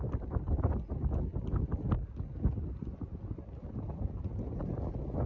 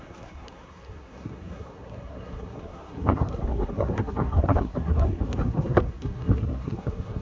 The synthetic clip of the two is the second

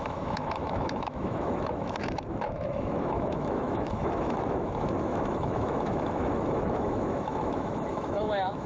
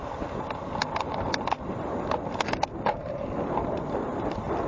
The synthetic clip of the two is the first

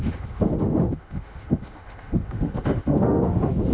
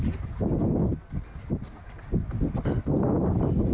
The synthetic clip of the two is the first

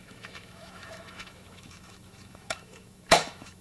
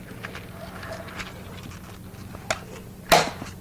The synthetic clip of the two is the first